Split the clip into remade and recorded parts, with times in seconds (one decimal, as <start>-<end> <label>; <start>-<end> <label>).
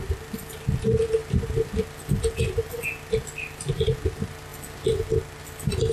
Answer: 0.0-4.5 remade; 4.5-5.4 recorded; 5.4-5.9 remade